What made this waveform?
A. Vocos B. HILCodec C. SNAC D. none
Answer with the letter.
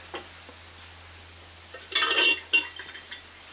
D